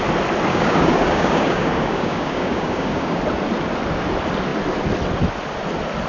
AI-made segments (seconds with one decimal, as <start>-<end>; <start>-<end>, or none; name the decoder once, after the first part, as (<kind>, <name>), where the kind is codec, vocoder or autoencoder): 0.5-3.2 (codec, DAC)